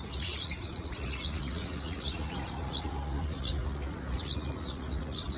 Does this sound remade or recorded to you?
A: remade